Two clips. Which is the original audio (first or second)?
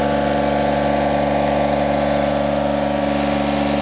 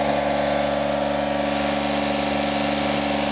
second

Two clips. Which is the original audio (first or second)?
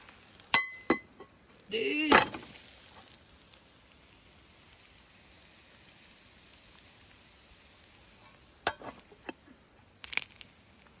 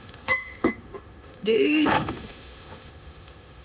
first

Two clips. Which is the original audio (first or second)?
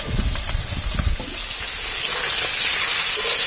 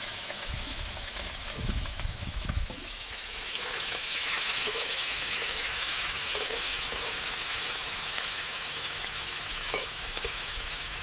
first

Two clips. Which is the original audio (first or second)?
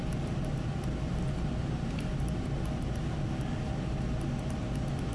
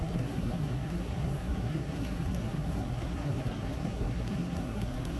first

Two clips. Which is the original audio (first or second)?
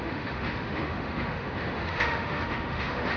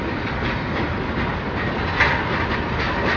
second